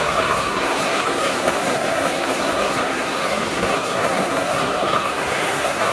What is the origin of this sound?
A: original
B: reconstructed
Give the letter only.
B